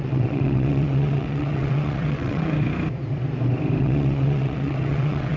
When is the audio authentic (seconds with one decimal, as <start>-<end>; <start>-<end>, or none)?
2.5-3.8